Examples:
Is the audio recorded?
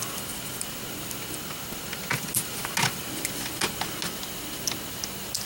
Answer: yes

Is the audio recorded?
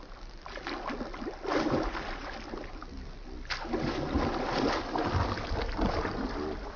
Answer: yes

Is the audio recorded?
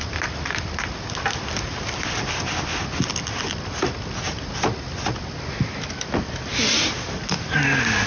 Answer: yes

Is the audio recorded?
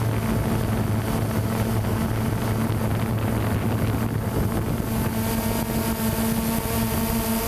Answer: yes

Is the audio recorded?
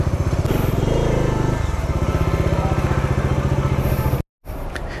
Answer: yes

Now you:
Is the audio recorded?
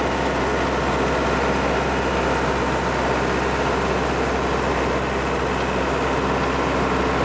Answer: yes